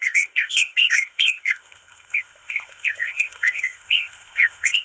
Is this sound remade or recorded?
remade